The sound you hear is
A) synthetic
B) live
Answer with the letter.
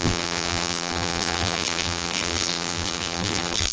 A